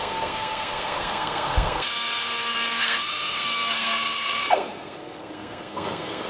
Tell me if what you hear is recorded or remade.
remade